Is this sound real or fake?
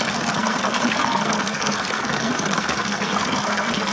fake